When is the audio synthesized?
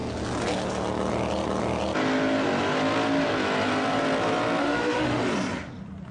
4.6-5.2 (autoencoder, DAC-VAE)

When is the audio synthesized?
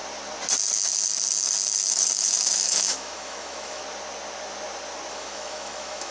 1.9-3.8 (autoencoder, DAC-VAE); 5.1-6.1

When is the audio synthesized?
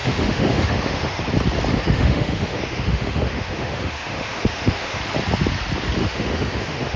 0.0-1.2 (autoencoder, DAC-VAE); 1.7-5.0; 6.0-7.0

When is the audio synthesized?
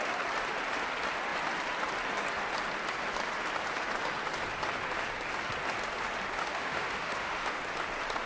6.4-7.6 (autoencoder, DAC-VAE)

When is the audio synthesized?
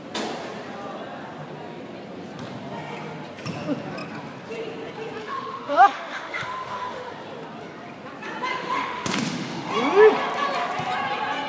5.2-7.1 (autoencoder, DAC-VAE); 8.5-9.7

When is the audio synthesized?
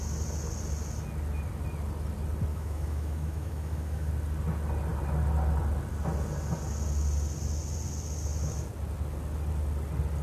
2.5-4.1 (autoencoder, DAC-VAE)